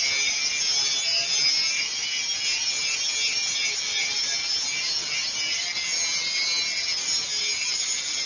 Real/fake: real